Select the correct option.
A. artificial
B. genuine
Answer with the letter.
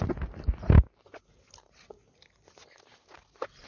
B